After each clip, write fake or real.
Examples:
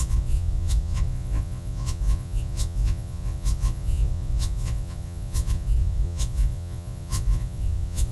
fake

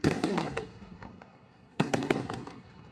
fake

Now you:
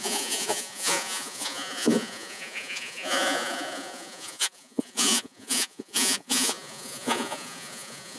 fake